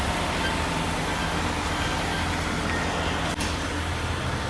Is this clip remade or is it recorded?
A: recorded